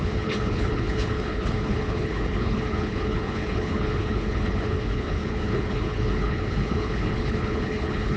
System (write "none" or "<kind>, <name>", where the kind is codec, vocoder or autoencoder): codec, HILCodec